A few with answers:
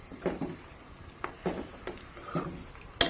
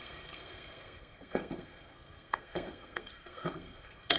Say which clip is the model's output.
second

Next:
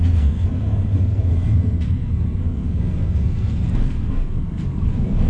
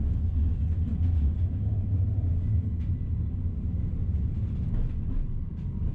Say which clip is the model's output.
first